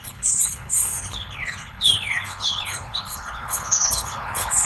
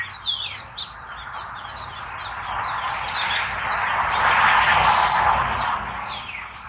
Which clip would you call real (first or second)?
second